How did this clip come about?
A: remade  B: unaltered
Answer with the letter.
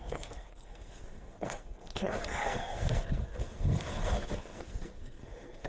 A